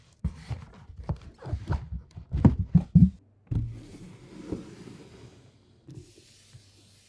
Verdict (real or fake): real